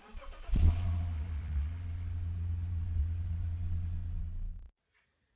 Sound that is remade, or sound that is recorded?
remade